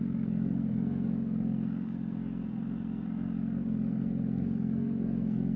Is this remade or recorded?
remade